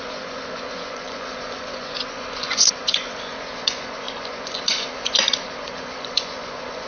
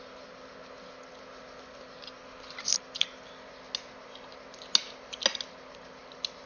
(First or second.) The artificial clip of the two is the first